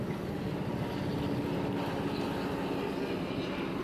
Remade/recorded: recorded